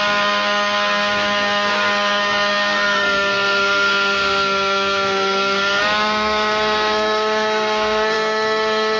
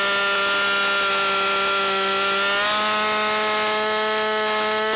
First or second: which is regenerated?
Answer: first